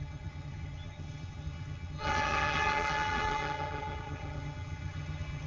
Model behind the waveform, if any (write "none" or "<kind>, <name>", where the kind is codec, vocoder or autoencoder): vocoder, HiFi-GAN